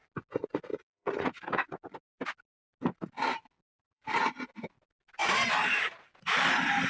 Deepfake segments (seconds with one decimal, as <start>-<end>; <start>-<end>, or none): 0.7-1.4; 3.7-4.5